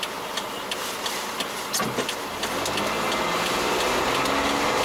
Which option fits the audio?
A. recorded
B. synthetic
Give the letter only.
A